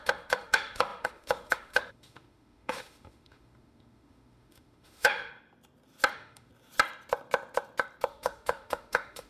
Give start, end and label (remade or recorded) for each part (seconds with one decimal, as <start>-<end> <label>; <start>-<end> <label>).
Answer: 0.0-5.3 remade; 5.3-6.1 recorded; 6.1-6.5 remade; 6.5-8.1 recorded; 8.1-9.3 remade